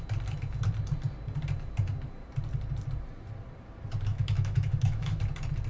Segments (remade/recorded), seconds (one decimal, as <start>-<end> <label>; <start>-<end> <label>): 0.0-4.1 recorded; 4.1-5.2 remade; 5.2-5.7 recorded